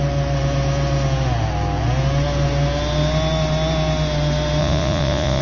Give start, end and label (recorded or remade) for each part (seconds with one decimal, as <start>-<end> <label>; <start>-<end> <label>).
0.0-4.6 recorded; 4.6-5.4 remade